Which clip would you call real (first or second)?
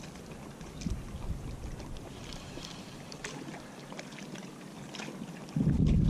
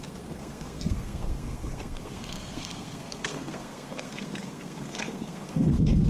first